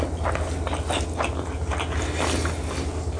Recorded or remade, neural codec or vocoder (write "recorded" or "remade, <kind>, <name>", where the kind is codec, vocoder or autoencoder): recorded